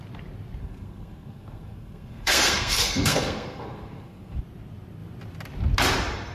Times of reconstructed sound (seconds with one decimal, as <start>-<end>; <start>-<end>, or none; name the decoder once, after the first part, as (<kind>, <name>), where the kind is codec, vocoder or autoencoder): 0.6-4.4 (codec, SNAC)